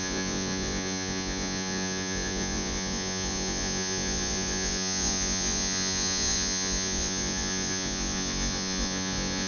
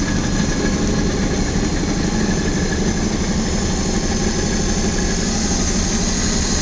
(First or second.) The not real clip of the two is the first